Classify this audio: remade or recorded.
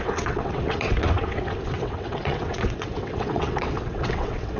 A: remade